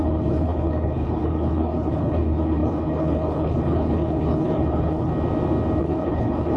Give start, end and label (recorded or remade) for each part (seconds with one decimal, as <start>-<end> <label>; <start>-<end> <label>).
0.0-5.1 remade; 5.1-5.8 recorded; 5.8-6.6 remade